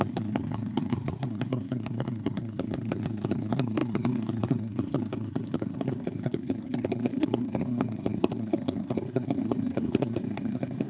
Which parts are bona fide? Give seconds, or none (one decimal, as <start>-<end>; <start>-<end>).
none